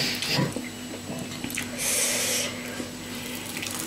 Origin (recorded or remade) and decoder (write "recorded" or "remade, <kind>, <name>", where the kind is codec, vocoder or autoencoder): recorded